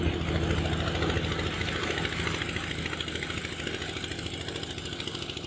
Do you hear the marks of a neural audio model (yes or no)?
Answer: no